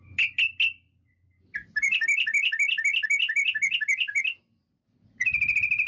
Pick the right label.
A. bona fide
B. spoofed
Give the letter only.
A